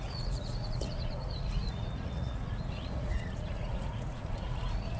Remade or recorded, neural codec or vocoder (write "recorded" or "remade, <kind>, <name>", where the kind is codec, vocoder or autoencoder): remade, vocoder, Vocos